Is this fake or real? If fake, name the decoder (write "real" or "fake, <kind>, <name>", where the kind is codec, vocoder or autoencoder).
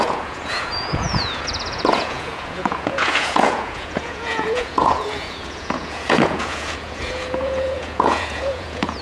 fake, vocoder, Vocos